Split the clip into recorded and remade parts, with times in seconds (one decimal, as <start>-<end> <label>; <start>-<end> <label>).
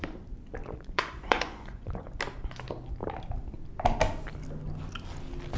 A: 0.0-0.6 recorded; 0.6-2.2 remade; 2.2-5.6 recorded